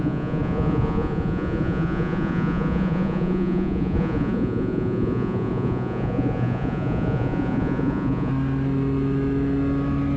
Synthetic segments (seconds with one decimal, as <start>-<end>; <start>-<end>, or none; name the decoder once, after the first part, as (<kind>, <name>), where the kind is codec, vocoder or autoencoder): 0.0-8.3 (vocoder, Vocos)